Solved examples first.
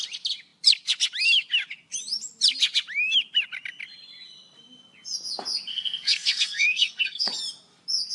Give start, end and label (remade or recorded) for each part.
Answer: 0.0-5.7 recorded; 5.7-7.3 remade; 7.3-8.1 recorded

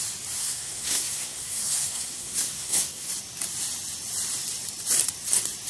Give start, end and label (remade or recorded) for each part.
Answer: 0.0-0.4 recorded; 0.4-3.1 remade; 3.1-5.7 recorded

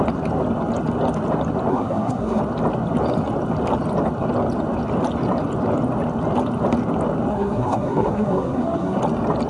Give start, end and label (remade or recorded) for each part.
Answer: 0.0-1.7 recorded; 1.7-2.4 remade; 2.4-7.3 recorded; 7.3-9.0 remade; 9.0-9.5 recorded

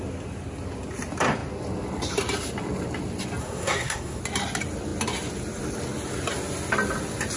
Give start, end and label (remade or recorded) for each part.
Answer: 0.0-3.4 recorded; 3.4-4.2 remade; 4.2-7.4 recorded

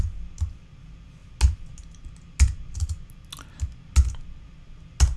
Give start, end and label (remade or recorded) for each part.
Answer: 0.0-5.2 recorded

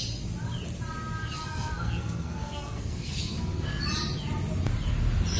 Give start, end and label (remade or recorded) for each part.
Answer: 0.0-1.2 recorded; 1.2-3.8 remade; 3.8-5.4 recorded

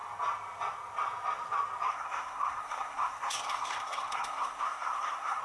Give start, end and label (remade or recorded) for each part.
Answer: 0.0-1.9 recorded; 1.9-5.4 remade